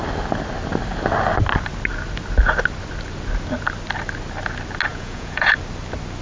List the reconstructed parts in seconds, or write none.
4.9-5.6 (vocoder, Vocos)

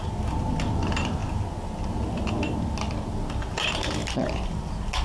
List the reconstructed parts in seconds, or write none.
none

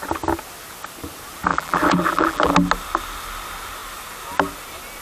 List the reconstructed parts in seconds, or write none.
1.5-2.5 (vocoder, BigVGAN v2)

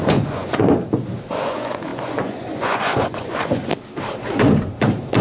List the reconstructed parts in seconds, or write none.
0.0-0.7 (vocoder, Vocos); 1.3-3.6

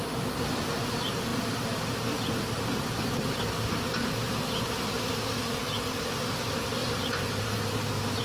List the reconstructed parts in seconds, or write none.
6.8-8.2 (vocoder, BigVGAN v2)

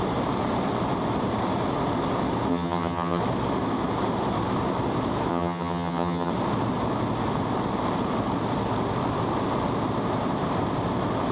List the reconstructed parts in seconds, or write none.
2.5-3.2 (vocoder, HiFi-GAN); 5.3-6.3